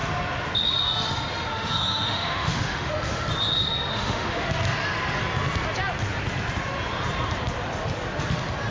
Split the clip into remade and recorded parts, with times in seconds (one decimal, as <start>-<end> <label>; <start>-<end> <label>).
0.0-1.5 recorded; 1.5-2.9 remade; 2.9-3.9 recorded; 3.9-4.5 remade; 4.5-8.7 recorded